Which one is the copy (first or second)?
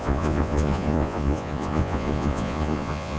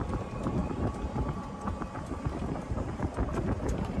first